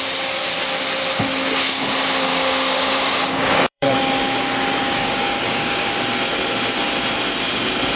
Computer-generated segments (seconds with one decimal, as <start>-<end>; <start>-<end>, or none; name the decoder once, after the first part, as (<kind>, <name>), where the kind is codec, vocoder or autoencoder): 2.3-4.0 (codec, DAC); 4.8-5.9